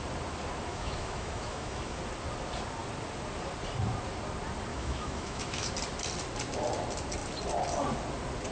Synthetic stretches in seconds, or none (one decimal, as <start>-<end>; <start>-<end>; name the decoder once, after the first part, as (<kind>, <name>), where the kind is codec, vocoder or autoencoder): 0.7-2.0 (autoencoder, DAC-VAE); 4.7-5.7